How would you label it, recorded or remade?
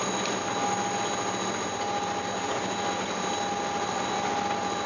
recorded